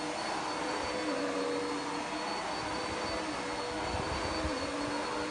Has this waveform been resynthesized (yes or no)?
no